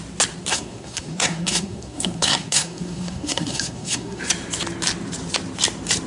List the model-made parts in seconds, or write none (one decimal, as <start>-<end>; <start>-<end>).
0.5-4.2